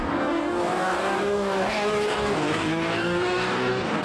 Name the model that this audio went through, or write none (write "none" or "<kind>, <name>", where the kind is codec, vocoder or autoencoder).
codec, DAC